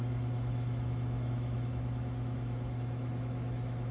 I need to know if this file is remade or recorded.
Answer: remade